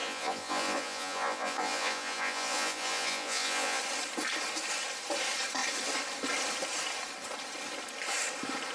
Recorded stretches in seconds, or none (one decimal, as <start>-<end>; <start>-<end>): 3.8-8.7